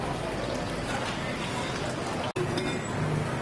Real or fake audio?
real